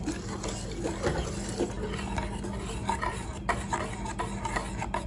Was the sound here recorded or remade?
recorded